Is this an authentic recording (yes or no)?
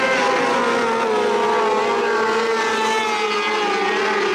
yes